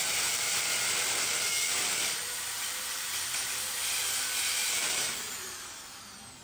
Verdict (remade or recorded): remade